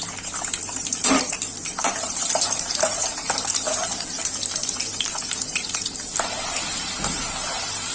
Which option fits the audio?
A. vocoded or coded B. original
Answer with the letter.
A